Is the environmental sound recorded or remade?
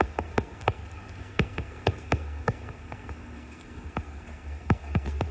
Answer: remade